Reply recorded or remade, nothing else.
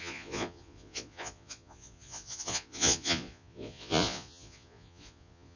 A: remade